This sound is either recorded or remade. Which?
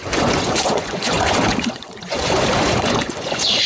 remade